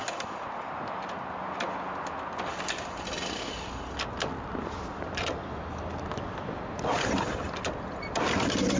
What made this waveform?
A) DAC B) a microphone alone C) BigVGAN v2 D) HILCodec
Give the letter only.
B